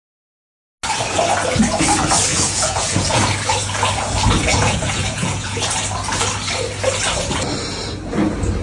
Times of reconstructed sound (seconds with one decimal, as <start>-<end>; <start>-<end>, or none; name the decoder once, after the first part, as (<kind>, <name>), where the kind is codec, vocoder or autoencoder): 2.3-3.2 (vocoder, Vocos); 4.5-5.7